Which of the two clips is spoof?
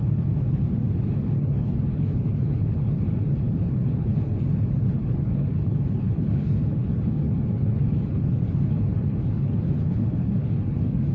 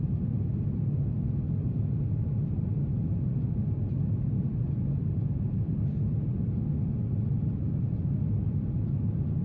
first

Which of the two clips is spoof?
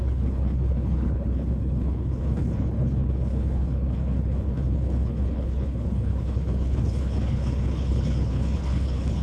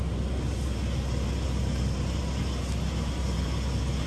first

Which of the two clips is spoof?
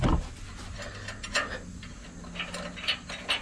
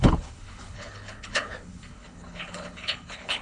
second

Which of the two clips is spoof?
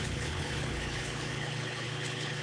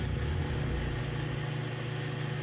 first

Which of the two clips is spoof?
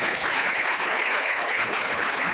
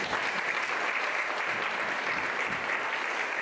first